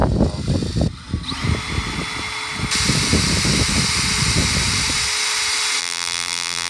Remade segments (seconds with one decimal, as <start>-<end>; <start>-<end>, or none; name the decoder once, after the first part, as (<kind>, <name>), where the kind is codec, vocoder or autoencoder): 5.8-6.7 (vocoder, BigVGAN v2)